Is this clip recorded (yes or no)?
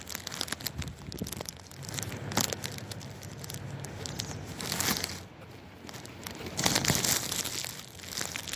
yes